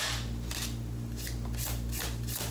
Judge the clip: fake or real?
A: real